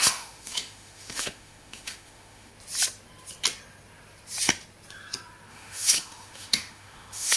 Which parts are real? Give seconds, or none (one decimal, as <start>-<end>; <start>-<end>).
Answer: 2.5-5.5